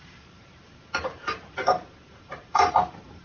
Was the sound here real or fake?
fake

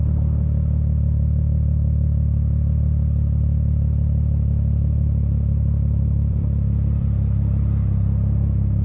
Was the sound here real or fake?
fake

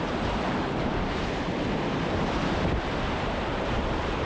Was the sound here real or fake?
fake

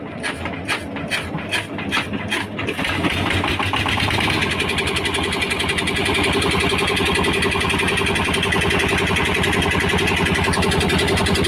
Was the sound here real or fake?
real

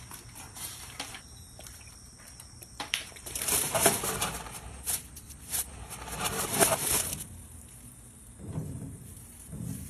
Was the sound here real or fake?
fake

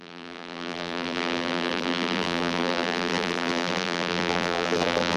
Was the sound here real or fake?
fake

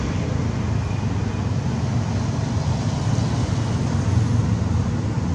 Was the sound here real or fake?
real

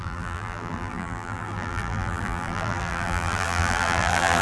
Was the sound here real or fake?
fake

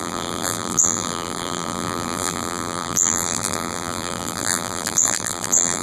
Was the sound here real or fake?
fake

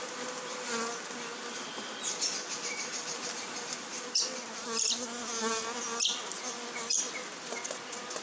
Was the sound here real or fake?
real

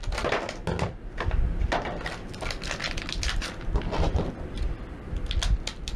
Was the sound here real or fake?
real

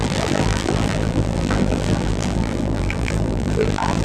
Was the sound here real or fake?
fake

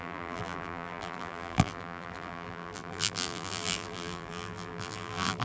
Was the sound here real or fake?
fake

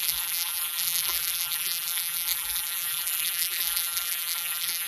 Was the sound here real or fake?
fake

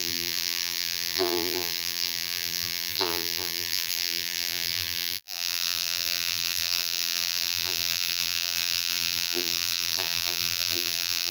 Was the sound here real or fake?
fake